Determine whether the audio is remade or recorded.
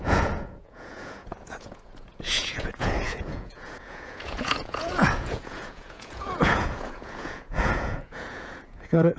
remade